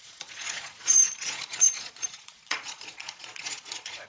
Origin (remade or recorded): remade